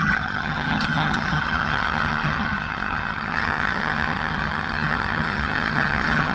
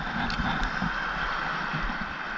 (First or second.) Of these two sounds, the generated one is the first